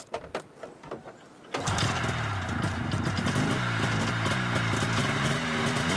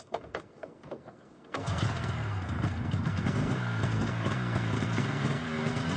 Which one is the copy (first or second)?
second